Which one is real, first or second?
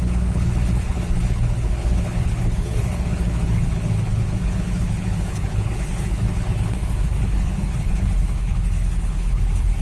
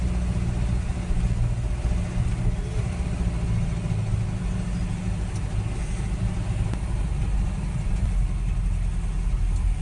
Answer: second